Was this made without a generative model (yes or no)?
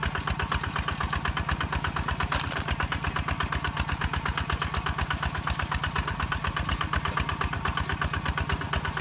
yes